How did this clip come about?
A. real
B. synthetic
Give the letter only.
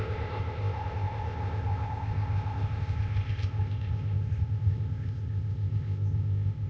B